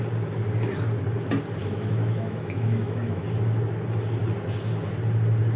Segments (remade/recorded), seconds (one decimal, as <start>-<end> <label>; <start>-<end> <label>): 0.0-1.6 recorded; 1.6-3.2 remade; 3.2-5.6 recorded